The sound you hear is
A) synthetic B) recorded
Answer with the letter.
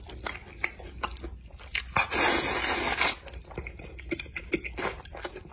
B